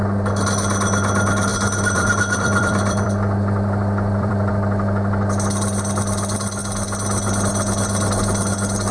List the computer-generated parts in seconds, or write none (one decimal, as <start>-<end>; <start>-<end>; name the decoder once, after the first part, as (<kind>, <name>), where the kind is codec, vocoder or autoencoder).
1.5-4.5 (vocoder, BigVGAN v2)

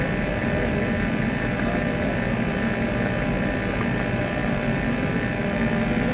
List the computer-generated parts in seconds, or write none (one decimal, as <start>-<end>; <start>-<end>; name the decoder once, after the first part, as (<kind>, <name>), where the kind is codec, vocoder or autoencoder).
none

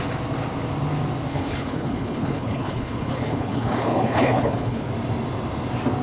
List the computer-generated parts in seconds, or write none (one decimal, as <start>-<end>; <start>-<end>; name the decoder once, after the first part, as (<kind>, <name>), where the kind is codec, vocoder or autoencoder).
1.3-4.9 (codec, HILCodec)

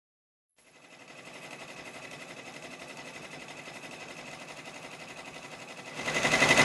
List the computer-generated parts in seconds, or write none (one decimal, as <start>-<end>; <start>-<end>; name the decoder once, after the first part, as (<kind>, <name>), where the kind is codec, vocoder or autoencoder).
0.5-4.3 (vocoder, Vocos)

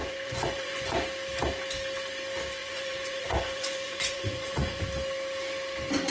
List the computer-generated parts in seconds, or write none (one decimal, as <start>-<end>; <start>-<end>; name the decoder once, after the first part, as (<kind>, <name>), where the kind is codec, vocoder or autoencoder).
0.0-1.0 (vocoder, Vocos); 2.6-4.8

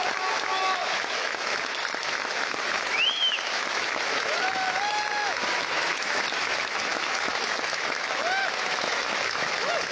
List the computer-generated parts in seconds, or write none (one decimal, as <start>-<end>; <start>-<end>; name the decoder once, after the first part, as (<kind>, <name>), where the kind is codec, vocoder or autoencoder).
0.0-9.9 (autoencoder, DAC-VAE)

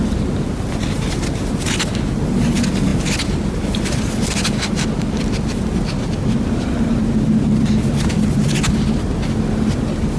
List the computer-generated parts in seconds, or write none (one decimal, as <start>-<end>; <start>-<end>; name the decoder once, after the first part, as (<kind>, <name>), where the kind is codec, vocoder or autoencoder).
none